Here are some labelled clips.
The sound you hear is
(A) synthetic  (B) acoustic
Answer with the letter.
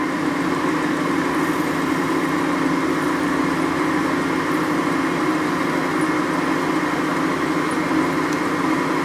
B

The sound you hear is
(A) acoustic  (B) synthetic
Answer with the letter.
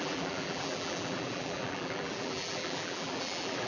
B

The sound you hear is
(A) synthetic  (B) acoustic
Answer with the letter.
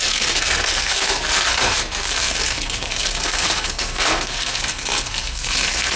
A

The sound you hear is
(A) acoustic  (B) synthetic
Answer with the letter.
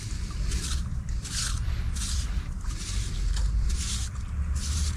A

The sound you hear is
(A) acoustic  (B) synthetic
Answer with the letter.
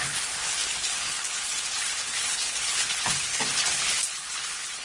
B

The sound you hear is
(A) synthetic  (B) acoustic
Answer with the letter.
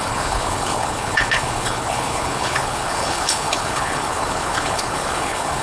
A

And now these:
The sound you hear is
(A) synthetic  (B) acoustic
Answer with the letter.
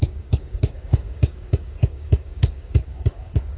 A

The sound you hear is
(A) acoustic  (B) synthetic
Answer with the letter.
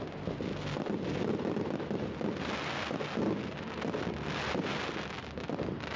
A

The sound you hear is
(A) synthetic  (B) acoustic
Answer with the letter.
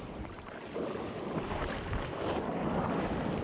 B